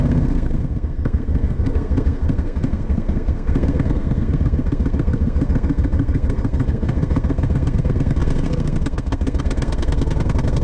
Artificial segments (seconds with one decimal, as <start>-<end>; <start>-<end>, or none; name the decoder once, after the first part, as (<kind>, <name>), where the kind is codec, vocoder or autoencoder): 0.0-10.6 (codec, SNAC)